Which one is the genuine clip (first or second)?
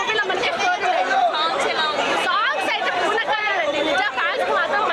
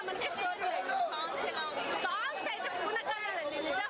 second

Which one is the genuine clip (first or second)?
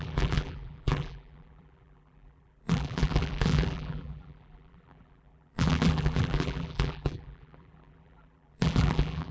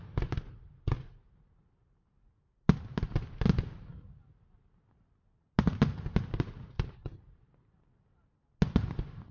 second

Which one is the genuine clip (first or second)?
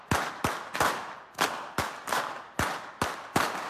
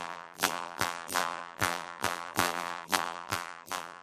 first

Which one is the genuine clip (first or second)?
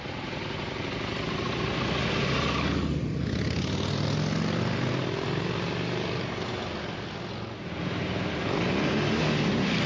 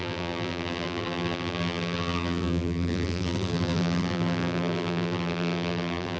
first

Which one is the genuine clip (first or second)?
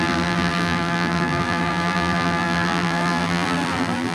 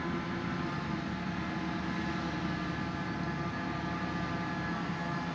second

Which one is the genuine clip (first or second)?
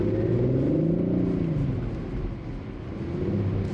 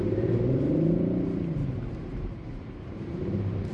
first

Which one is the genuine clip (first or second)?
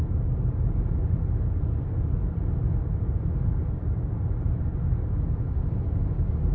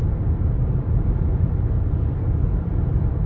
first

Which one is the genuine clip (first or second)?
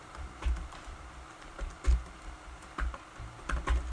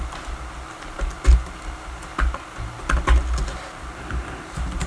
second